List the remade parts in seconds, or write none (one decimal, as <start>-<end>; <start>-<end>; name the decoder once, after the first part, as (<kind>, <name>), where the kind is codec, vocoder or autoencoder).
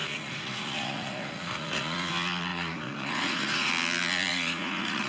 0.0-2.1 (vocoder, Vocos); 2.5-3.7; 4.3-5.1